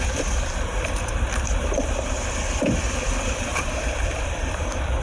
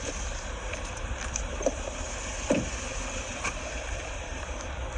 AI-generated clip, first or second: first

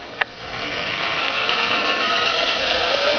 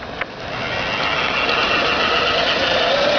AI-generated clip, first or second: first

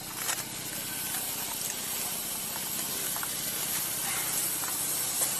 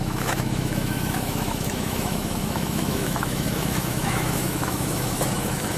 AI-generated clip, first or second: second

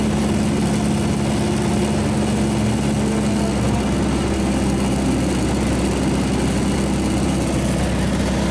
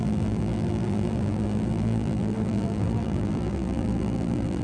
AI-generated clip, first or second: second